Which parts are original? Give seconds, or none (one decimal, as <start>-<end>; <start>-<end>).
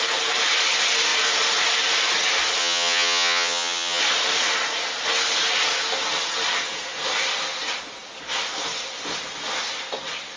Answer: 0.0-2.6; 4.0-10.4